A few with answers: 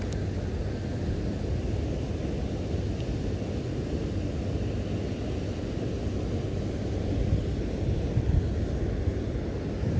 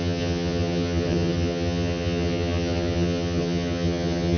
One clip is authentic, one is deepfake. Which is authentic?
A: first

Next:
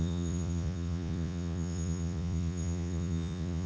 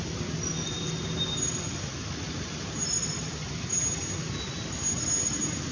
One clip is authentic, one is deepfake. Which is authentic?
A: second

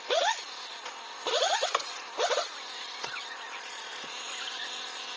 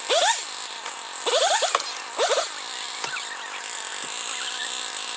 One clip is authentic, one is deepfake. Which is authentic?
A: second